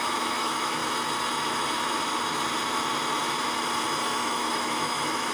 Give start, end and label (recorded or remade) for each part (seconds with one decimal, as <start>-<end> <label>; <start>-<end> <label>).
0.0-0.8 remade; 0.8-4.0 recorded; 4.0-5.3 remade